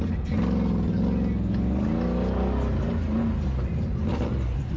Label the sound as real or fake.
real